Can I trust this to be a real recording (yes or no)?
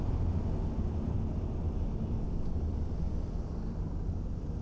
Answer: yes